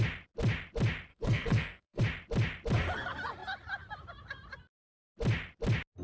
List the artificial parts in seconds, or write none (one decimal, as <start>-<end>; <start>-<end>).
1.1-2.0